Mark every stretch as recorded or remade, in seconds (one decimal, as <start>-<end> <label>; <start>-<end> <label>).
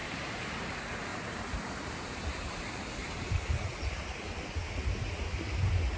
0.0-0.7 remade; 0.7-1.1 recorded; 1.1-4.7 remade; 4.7-6.0 recorded